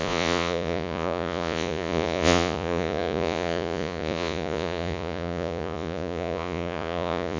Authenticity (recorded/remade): remade